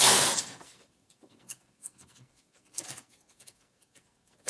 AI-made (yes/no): yes